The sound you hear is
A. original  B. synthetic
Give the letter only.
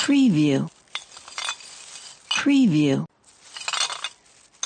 A